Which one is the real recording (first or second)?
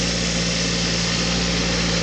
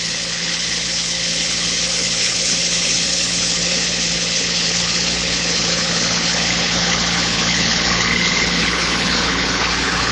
first